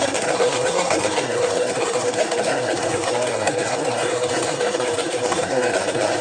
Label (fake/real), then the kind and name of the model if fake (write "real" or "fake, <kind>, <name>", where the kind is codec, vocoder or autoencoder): fake, codec, SNAC